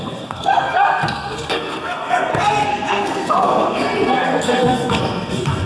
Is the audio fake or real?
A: fake